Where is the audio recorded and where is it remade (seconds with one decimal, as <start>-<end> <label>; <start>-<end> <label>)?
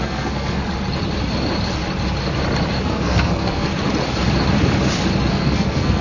0.0-0.6 remade; 0.6-2.8 recorded; 2.8-3.7 remade; 3.7-5.3 recorded; 5.3-6.0 remade